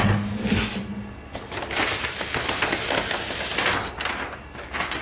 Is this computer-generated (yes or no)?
no